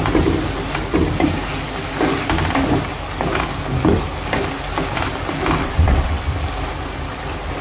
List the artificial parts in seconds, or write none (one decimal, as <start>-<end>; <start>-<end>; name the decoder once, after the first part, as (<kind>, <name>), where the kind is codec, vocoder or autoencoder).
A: 5.6-6.2 (vocoder, WaveNeXt)